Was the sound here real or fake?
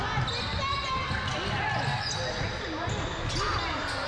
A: real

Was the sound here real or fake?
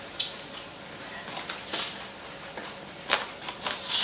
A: real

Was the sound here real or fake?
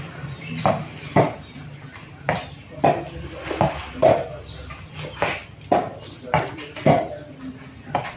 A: real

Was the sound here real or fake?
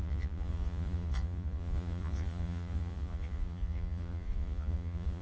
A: fake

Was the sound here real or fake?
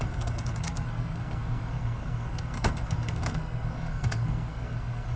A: fake